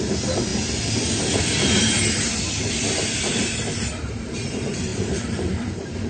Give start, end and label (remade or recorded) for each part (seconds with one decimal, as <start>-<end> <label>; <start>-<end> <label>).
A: 0.0-0.5 remade; 0.5-4.2 recorded; 4.2-6.1 remade